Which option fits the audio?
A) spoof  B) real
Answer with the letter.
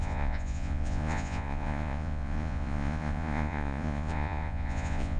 A